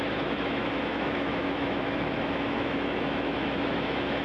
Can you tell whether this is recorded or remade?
remade